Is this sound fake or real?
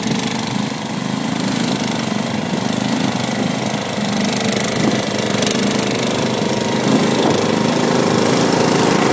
real